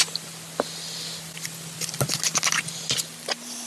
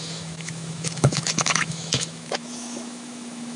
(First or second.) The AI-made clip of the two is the second